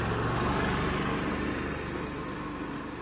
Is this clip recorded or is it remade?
recorded